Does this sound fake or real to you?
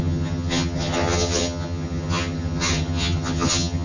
fake